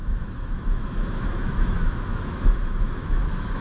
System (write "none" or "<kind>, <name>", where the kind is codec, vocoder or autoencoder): autoencoder, DAC-VAE